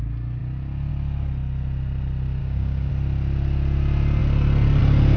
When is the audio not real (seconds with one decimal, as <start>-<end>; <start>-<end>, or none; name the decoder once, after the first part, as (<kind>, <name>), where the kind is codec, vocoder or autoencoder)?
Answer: 2.4-2.9 (codec, DAC)